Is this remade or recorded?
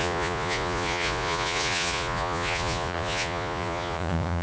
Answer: remade